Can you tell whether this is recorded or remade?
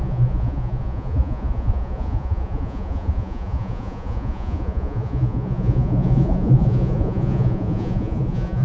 remade